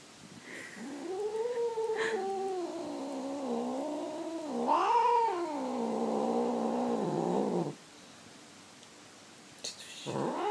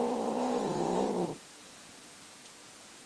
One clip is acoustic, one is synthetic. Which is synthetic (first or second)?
second